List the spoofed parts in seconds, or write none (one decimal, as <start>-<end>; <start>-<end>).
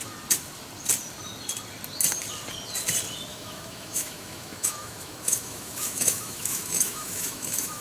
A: 3.3-7.8